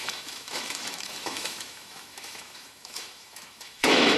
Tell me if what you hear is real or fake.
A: fake